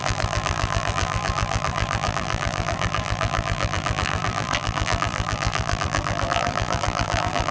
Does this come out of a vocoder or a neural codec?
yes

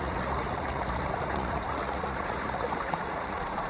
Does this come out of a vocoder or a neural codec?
yes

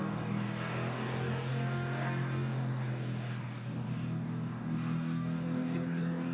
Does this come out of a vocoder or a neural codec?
yes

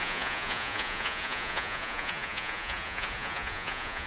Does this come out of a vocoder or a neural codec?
yes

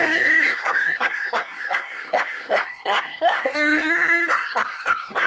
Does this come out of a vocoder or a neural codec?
yes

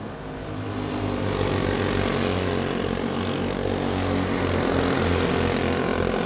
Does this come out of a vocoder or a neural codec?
no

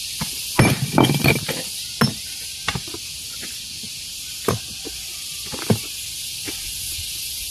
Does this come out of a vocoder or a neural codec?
no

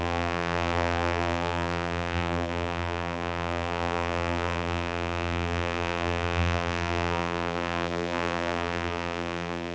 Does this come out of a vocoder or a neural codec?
yes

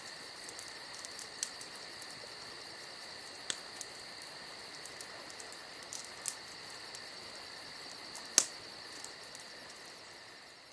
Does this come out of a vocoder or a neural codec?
no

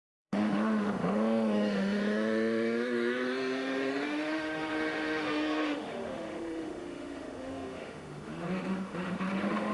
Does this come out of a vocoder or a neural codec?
yes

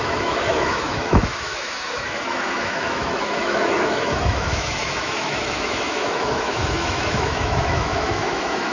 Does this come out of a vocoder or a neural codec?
yes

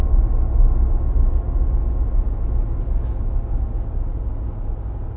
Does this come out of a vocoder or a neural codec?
no